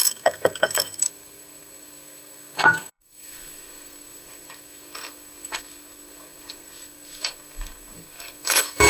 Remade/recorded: remade